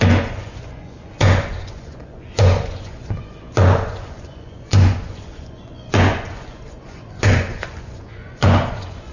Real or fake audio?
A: fake